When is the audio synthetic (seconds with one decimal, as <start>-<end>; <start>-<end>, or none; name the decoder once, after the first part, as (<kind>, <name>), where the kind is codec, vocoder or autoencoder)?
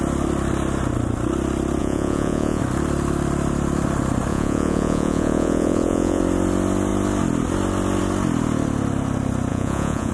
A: 1.8-2.6 (vocoder, Vocos); 4.3-6.2; 9.5-10.1